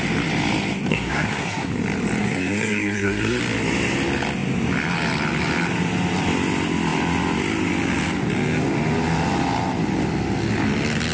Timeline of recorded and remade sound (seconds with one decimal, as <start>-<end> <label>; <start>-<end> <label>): 0.0-0.9 recorded; 0.9-1.7 remade; 1.7-2.2 recorded; 2.2-3.4 remade; 3.4-11.1 recorded